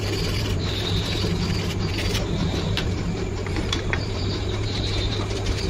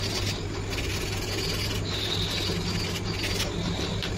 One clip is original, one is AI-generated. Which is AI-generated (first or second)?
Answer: first